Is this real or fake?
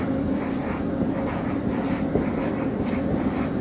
real